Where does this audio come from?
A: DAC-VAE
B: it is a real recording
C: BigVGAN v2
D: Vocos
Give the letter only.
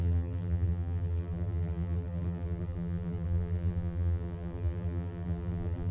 C